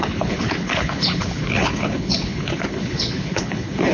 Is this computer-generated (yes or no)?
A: yes